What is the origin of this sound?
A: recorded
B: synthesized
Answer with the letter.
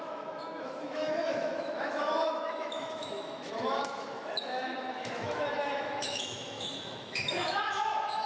B